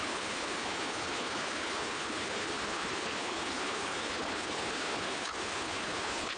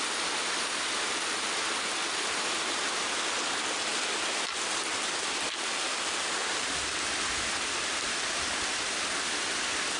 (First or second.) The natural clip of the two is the second